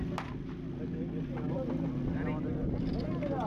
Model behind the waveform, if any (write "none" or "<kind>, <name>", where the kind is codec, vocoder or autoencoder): none